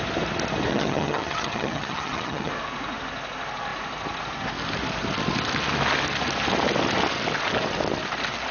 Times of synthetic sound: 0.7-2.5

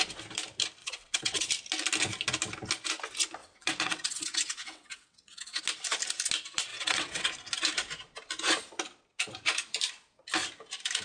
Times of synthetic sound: 0.8-1.5; 3.4-5.6; 6.7-7.3

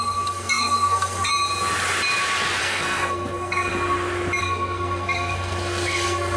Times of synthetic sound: 0.0-1.3; 2.6-3.7; 4.4-6.4

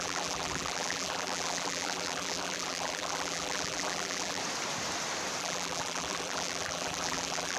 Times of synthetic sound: 0.0-4.4; 5.4-7.6

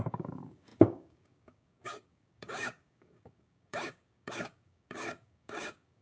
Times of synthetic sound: 0.0-6.0

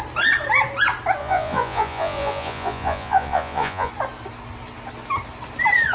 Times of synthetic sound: 1.2-3.9

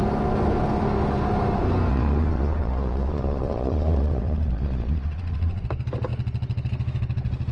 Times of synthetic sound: 1.9-5.6